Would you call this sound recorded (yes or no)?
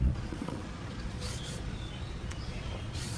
no